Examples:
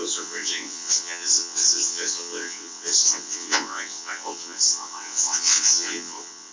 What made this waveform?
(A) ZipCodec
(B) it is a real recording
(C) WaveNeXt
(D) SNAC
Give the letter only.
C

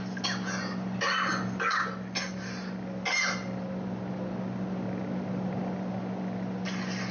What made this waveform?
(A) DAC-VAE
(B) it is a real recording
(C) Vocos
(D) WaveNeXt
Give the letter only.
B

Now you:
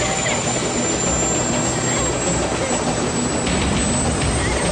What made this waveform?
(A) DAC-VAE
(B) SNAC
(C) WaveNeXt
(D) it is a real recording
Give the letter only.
D